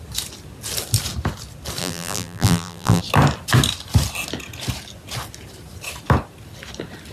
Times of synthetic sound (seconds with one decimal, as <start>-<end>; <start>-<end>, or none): 1.8-3.0